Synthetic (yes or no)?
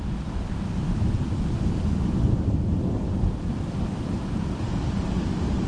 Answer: no